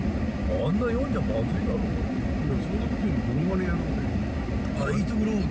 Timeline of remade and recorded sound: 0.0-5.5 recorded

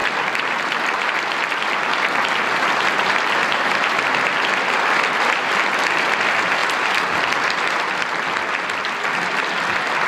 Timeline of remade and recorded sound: 0.0-10.1 recorded

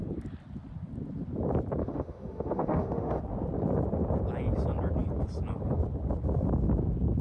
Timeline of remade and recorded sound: 0.0-1.8 recorded; 1.8-3.2 remade; 3.2-7.2 recorded

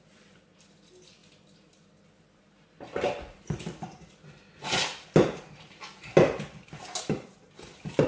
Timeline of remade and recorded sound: 0.0-8.1 recorded

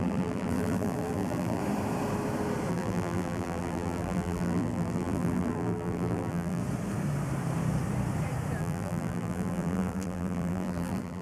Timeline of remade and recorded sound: 0.0-1.6 remade; 1.6-2.7 recorded; 2.7-6.6 remade; 6.6-8.6 recorded; 8.6-11.2 remade

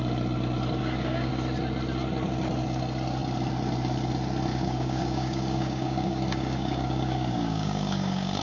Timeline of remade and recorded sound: 0.0-0.8 recorded; 0.8-1.3 remade; 1.3-4.5 recorded; 4.5-8.4 remade